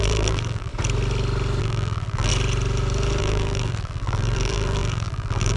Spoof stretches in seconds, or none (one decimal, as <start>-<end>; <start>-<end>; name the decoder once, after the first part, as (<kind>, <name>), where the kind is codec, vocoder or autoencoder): 0.0-0.7 (vocoder, BigVGAN v2); 1.6-2.3; 3.2-5.6